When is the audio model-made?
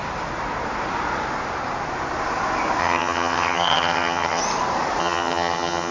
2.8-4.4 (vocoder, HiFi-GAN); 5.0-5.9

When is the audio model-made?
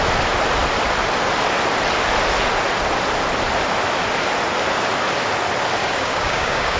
5.8-6.8 (codec, DAC)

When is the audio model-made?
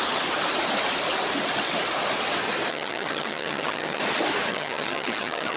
2.7-4.0 (vocoder, HiFi-GAN); 4.5-5.6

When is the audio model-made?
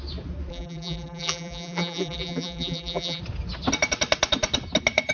0.5-3.2 (vocoder, BigVGAN v2)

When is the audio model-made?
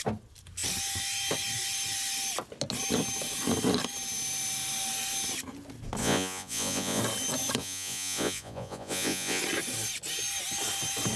6.0-7.0 (vocoder, Vocos); 7.6-9.4